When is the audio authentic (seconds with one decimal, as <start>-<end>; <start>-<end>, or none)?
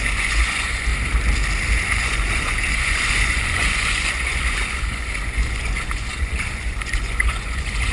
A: 0.9-1.9